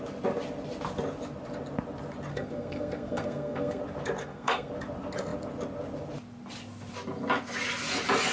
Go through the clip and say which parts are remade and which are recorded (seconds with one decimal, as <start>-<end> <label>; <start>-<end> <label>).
0.0-2.3 recorded; 2.3-3.8 remade; 3.8-4.2 recorded; 4.2-4.7 remade; 4.7-8.3 recorded